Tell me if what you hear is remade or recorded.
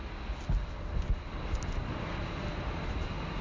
recorded